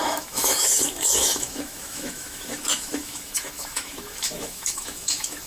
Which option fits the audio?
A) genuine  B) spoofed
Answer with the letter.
B